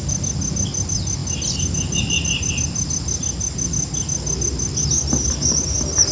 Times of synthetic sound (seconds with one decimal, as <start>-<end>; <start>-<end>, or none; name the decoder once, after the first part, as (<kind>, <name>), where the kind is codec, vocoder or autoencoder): none